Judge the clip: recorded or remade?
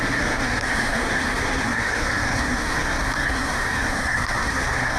remade